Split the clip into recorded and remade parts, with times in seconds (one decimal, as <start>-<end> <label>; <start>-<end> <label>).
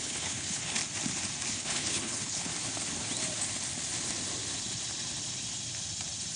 0.0-0.8 remade; 0.8-1.5 recorded; 1.5-2.5 remade; 2.5-6.4 recorded